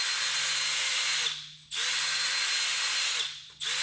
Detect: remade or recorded recorded